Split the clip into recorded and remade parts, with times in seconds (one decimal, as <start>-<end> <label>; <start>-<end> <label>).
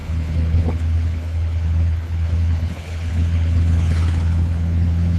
0.0-5.2 remade